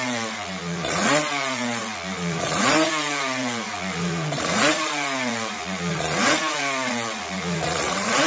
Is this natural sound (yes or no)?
no